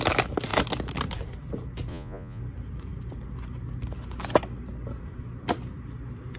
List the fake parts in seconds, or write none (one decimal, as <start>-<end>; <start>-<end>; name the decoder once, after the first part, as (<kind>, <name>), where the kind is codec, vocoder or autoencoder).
1.9-2.4 (vocoder, Vocos)